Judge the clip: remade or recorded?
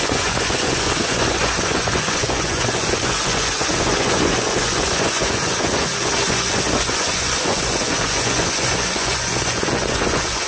remade